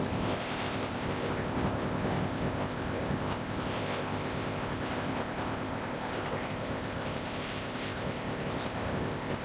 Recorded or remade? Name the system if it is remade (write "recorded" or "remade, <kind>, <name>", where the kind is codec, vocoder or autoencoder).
remade, codec, ZipCodec